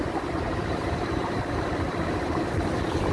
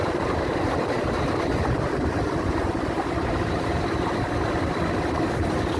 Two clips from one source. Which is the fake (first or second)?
first